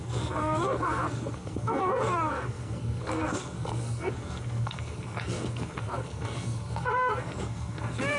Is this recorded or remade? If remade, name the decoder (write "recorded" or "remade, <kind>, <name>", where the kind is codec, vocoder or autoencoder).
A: remade, codec, SNAC